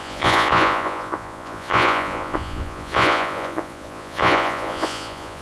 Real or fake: fake